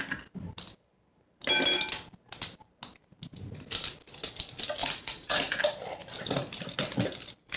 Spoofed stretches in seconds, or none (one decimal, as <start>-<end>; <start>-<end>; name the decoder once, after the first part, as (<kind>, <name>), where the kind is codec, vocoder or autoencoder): 4.8-5.6 (vocoder, Vocos)